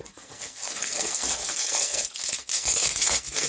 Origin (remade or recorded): remade